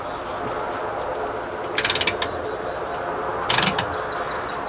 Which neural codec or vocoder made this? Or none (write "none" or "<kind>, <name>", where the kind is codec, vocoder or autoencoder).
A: none